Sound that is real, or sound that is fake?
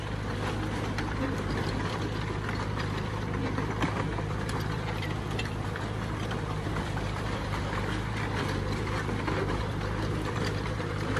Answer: fake